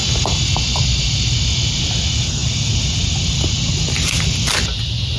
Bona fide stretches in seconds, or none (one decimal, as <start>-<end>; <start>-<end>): 0.0-5.2